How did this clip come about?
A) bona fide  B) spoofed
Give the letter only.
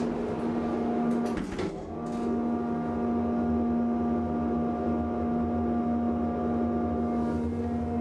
A